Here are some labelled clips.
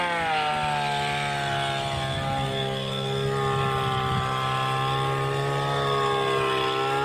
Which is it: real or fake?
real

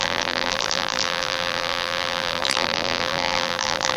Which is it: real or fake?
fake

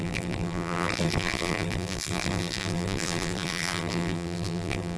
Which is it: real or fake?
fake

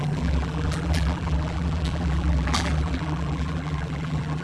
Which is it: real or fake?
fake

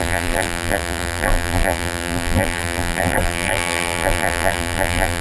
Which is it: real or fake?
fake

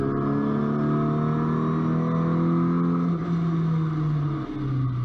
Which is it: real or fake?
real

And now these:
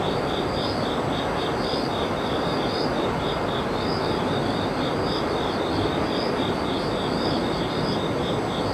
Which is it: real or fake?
real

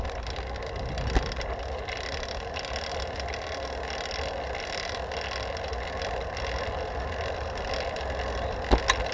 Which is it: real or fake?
real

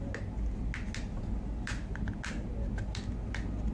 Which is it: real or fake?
real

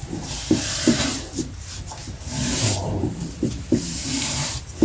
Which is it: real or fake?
fake